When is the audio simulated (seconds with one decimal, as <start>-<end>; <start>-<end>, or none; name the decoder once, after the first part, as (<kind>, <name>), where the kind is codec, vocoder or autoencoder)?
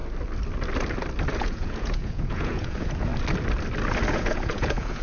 1.4-3.1 (vocoder, Vocos); 4.1-5.0